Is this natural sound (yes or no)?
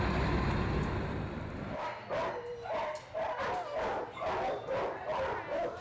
yes